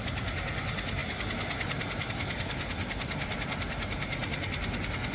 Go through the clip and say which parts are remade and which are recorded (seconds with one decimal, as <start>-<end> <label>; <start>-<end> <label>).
0.0-5.1 recorded